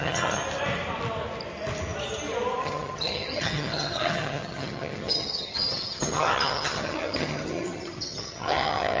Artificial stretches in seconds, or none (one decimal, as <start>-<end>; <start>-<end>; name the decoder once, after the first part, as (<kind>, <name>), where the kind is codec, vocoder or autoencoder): 0.0-0.4 (vocoder, HiFi-GAN); 2.6-9.0